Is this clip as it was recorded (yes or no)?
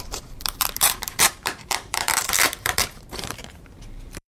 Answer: no